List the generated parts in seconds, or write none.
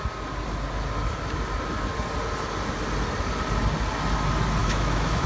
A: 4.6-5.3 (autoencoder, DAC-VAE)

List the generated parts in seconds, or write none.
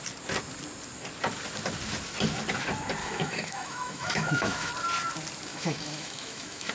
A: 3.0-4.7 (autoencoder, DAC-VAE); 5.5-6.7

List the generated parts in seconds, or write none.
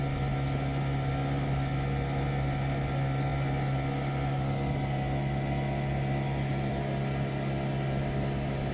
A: none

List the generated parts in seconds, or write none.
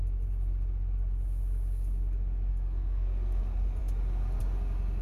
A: 2.5-3.4 (codec, SNAC)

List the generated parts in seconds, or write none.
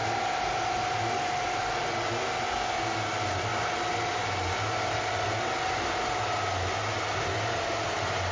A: none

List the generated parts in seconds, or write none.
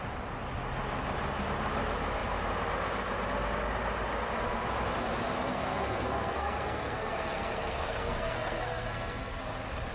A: 5.5-9.4 (codec, SNAC)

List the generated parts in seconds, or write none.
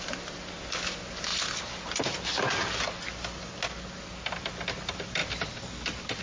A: 5.2-6.2 (vocoder, BigVGAN v2)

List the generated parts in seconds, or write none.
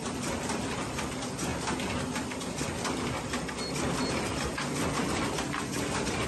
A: 0.0-1.1 (vocoder, BigVGAN v2)